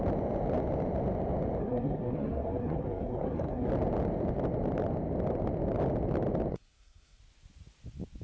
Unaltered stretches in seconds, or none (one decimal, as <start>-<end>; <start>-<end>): 0.0-1.6; 3.7-6.5; 7.2-8.2